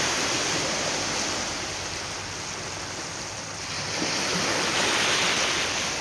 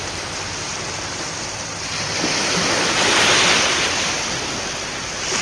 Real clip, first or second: first